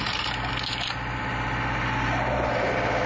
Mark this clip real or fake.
fake